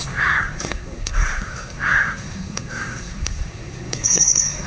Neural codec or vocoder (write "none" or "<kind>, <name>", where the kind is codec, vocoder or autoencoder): codec, SNAC